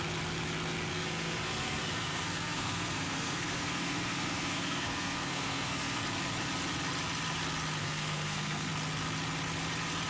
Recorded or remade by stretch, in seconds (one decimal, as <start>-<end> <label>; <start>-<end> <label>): 0.0-0.9 recorded; 0.9-6.0 remade; 6.0-7.8 recorded; 7.8-8.7 remade; 8.7-10.1 recorded